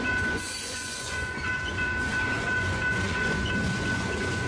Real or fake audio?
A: fake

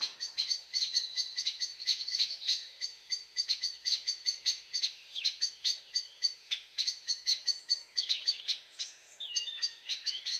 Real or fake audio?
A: fake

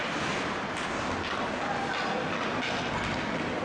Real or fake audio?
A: real